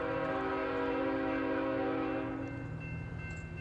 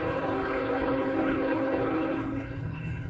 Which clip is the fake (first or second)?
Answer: second